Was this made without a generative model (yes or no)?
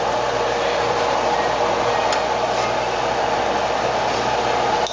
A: yes